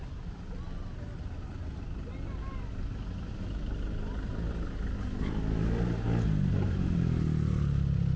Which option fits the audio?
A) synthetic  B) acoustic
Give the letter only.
B